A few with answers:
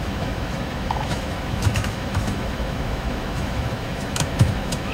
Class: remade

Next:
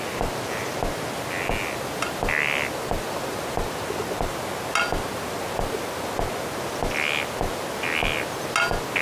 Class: recorded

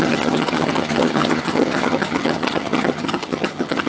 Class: remade